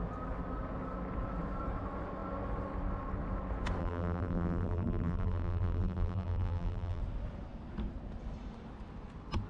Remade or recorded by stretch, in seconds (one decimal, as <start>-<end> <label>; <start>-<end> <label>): 0.0-3.8 recorded; 3.8-7.0 remade; 7.0-9.5 recorded